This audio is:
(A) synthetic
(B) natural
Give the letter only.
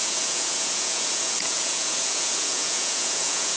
A